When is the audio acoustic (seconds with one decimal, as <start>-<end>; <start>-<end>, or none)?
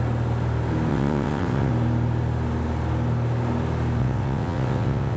0.0-0.9; 1.7-4.0